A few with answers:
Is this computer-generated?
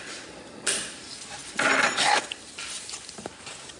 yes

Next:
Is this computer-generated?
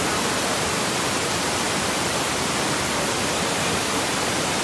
yes